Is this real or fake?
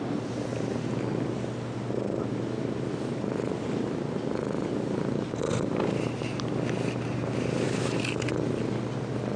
real